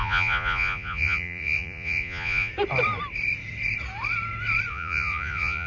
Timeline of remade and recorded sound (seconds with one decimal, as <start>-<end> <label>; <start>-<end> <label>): 0.0-2.5 remade; 2.5-4.7 recorded; 4.7-5.7 remade